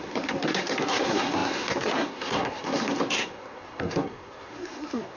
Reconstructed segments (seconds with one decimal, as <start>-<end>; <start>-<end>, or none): 0.0-5.2